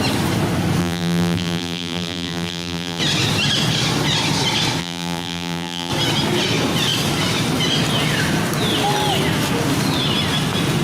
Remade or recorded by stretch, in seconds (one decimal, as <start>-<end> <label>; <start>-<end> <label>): 0.0-0.8 recorded; 0.8-3.0 remade; 3.0-4.8 recorded; 4.8-5.9 remade; 5.9-10.8 recorded